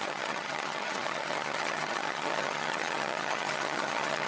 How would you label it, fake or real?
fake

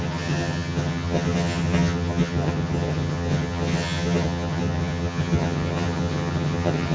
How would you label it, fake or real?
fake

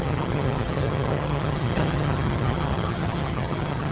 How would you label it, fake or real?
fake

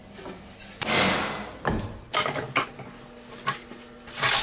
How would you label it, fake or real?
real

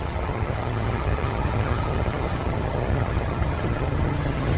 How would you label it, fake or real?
fake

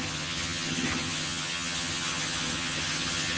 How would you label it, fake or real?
fake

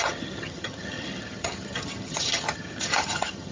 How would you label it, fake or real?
fake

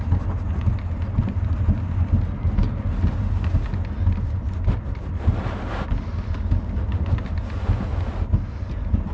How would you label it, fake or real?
real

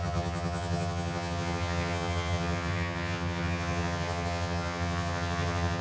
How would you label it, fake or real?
fake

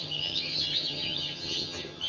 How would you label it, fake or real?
fake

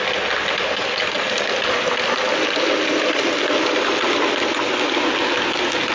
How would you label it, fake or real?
real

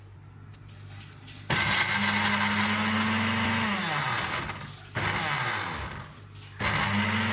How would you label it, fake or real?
real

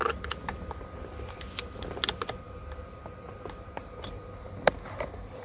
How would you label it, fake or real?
real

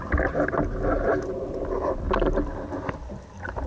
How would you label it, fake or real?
real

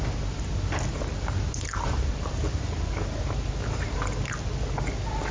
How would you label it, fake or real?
real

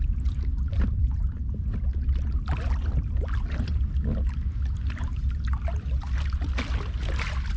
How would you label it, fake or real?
real